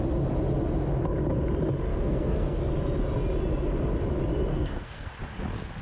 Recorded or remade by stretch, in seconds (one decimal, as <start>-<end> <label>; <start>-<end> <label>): 0.0-1.9 recorded; 1.9-2.7 remade; 2.7-4.5 recorded; 4.5-5.1 remade; 5.1-5.8 recorded